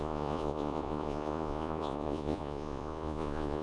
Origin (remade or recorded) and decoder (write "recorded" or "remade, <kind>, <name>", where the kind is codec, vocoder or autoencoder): remade, vocoder, Vocos